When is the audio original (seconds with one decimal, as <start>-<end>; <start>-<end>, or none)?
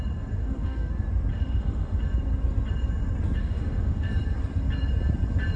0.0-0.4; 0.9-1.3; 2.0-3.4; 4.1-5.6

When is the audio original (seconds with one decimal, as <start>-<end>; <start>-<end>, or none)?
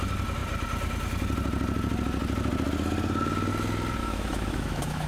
0.0-4.0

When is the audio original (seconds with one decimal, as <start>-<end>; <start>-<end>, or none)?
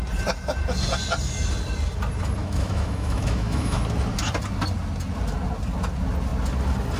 0.0-2.4; 3.8-7.0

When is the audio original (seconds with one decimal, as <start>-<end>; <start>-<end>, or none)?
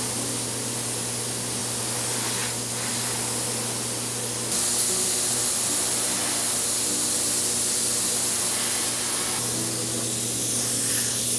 0.0-11.4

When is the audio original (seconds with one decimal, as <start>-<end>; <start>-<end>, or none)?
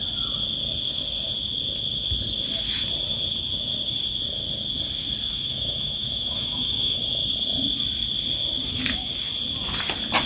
0.0-5.3; 7.0-10.3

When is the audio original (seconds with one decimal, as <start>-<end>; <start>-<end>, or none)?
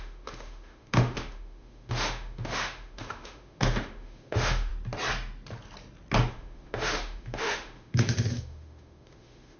4.7-6.3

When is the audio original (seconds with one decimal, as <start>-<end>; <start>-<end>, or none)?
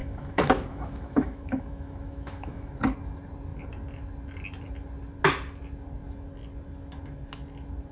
2.7-7.9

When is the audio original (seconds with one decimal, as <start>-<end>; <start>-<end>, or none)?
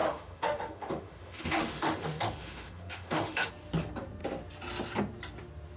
3.5-5.8